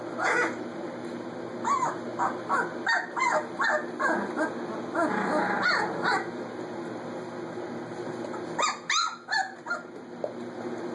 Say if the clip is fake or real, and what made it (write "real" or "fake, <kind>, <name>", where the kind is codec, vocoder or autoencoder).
real